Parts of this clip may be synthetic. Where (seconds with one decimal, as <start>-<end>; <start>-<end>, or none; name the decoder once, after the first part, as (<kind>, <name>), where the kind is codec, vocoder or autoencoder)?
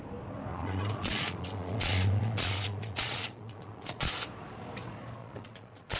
0.5-4.1 (vocoder, Vocos); 5.2-6.0